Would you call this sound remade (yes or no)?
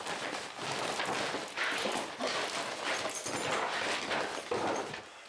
no